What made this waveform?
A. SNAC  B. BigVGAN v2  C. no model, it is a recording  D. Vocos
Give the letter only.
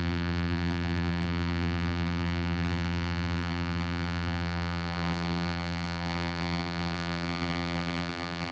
B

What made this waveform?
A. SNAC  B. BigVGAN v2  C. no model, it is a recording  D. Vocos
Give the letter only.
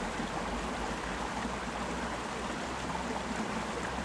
C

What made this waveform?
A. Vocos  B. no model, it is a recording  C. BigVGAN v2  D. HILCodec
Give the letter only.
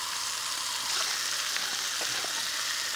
B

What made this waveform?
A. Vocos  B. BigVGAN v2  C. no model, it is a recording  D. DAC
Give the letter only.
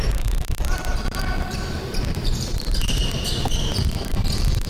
B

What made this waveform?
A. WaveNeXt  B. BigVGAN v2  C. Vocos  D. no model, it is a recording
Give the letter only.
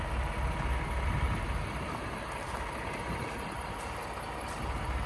D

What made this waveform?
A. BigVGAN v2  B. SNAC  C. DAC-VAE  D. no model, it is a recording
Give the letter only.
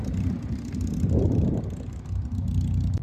D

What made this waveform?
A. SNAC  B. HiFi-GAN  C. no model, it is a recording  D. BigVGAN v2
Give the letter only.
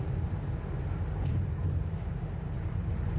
D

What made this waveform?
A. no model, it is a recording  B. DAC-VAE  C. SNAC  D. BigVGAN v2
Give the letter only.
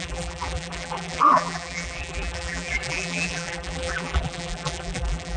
D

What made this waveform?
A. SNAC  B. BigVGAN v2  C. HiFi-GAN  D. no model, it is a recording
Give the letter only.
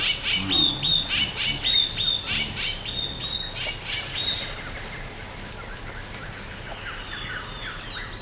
D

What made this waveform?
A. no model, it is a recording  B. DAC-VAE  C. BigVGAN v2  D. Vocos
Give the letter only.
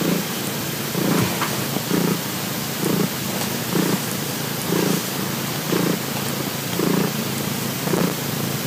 A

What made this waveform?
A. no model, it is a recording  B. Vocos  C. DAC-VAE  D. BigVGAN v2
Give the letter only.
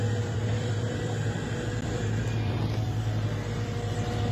D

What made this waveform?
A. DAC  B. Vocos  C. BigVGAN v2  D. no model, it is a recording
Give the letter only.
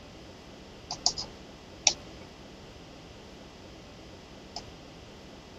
D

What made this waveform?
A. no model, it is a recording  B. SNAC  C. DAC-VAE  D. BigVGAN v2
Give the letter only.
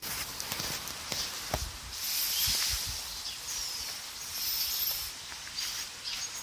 A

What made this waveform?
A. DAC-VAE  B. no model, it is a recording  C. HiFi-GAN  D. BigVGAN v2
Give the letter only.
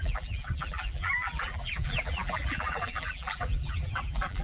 D